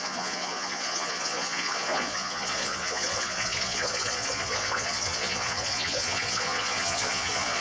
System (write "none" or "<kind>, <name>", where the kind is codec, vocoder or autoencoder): vocoder, Vocos